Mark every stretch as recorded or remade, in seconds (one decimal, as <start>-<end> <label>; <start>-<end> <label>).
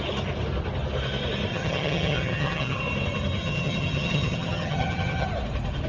0.0-1.5 recorded; 1.5-2.8 remade; 2.8-3.4 recorded; 3.4-5.3 remade; 5.3-5.9 recorded